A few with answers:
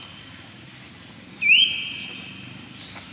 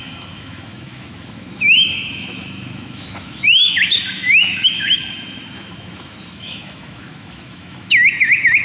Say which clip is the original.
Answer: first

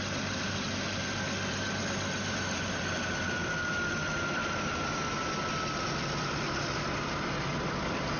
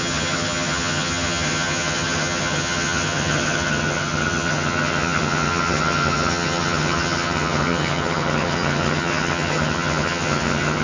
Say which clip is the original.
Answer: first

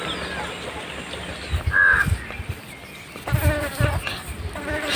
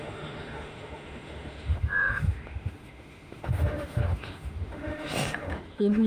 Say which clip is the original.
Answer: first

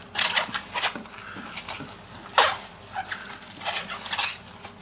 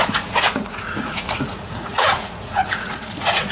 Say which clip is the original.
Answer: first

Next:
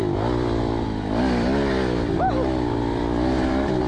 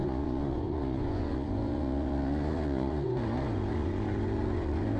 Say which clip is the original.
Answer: first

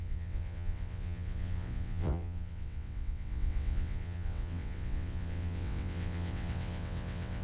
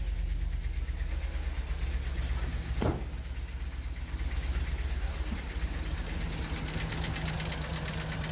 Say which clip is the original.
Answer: second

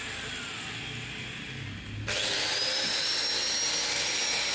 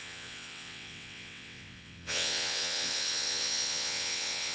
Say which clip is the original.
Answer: first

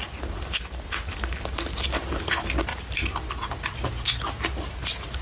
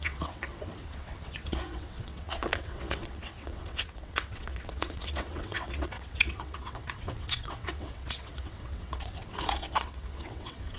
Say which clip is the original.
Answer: first